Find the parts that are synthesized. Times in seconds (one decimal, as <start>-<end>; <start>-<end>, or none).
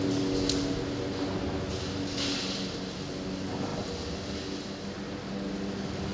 none